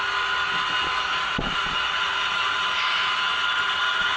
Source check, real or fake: real